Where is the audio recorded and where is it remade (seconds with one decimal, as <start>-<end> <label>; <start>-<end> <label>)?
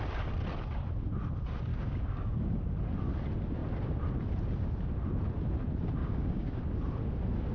0.0-1.7 recorded; 1.7-2.4 remade; 2.4-6.0 recorded; 6.0-6.6 remade; 6.6-7.5 recorded